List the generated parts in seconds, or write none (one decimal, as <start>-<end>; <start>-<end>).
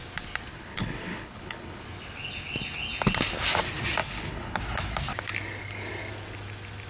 0.5-1.8; 4.0-4.6